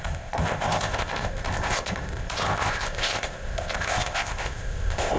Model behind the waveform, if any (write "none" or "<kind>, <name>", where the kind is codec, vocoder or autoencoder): codec, ZipCodec